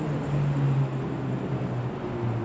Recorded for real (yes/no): yes